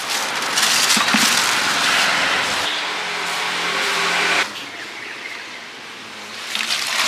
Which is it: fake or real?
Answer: real